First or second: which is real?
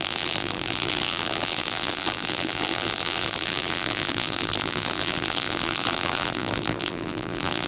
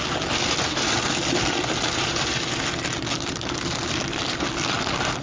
second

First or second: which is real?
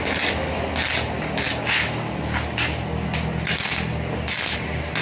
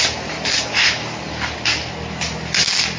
first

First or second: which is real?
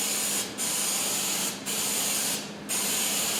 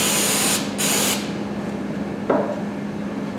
second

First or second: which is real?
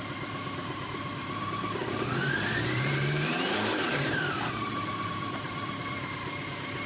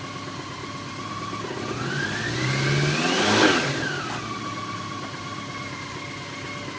second